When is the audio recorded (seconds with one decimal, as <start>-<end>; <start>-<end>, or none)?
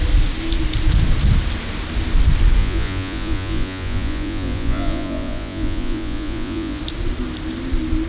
0.0-2.6; 6.8-8.1